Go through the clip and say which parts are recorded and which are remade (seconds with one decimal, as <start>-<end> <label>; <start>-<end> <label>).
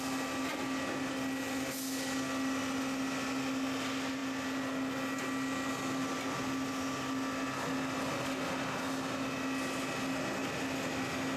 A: 0.0-11.4 recorded